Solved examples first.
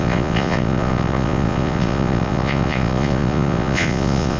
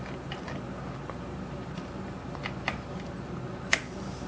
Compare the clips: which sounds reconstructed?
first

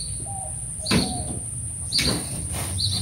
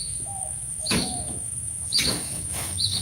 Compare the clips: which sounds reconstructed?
second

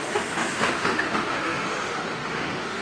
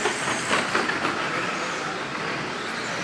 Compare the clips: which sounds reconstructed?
first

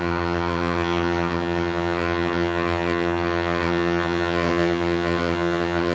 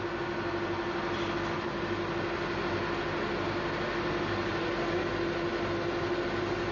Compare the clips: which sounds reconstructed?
first